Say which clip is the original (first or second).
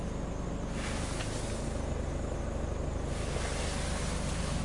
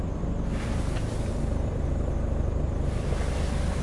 first